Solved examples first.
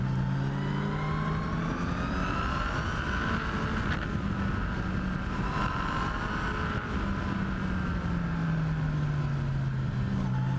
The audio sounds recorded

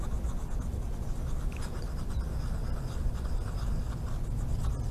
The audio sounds recorded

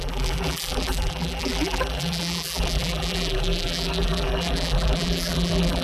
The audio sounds remade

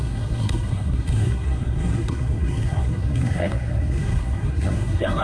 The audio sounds remade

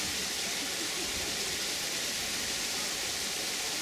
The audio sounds recorded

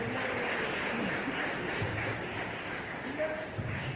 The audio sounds recorded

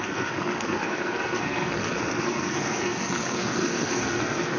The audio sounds remade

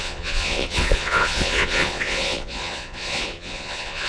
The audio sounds remade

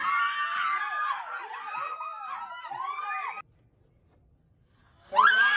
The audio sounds recorded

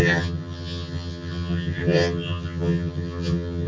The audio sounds remade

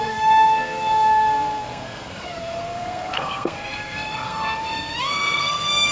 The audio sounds remade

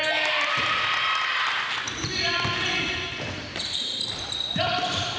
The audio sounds recorded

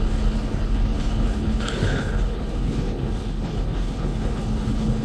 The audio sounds remade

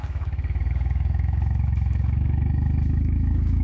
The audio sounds remade